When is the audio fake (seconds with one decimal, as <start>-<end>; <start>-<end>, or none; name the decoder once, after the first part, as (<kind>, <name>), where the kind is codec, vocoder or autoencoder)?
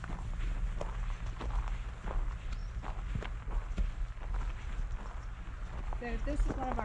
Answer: none